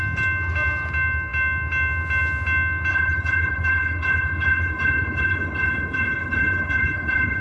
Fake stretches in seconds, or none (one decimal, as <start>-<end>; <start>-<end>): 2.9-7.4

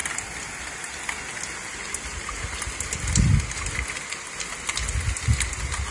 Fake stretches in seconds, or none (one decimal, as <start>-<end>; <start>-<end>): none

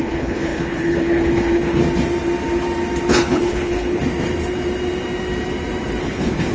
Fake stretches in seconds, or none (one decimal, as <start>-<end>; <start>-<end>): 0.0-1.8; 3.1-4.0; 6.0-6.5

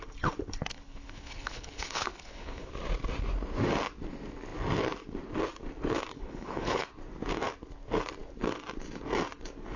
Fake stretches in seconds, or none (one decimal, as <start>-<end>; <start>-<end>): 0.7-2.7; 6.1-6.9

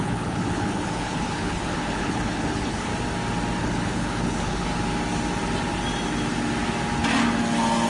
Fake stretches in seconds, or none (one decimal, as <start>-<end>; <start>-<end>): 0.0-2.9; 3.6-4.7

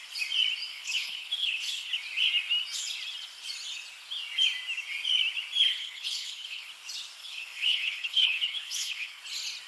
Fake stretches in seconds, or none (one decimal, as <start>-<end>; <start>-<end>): 0.7-1.9; 5.7-6.7; 7.2-9.2